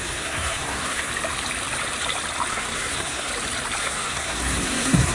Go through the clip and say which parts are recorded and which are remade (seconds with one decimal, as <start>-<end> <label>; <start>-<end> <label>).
0.0-1.1 remade; 1.1-2.5 recorded; 2.5-3.3 remade; 3.3-3.8 recorded; 3.8-5.1 remade